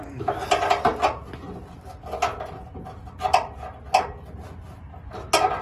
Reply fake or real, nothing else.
real